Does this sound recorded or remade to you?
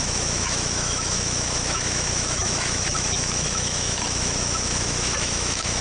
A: remade